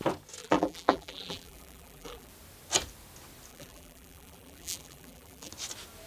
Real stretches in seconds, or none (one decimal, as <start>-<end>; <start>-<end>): 0.0-0.4; 2.3-3.5; 5.5-6.1